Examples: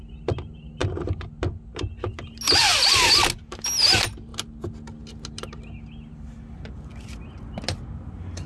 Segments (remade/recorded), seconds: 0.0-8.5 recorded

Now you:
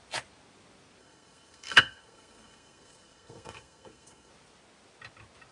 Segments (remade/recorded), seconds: 0.0-1.0 recorded; 1.0-4.3 remade; 4.3-5.5 recorded